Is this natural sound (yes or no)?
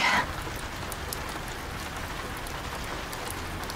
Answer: yes